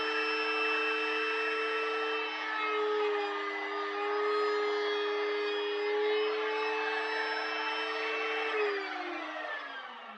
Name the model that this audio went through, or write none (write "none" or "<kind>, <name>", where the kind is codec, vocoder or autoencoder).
none